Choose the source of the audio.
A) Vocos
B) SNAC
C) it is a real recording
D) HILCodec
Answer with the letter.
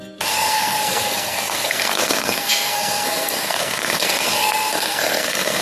B